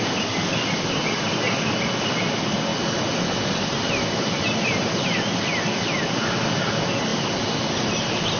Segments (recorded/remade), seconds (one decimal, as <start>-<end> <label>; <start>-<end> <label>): 0.0-8.4 recorded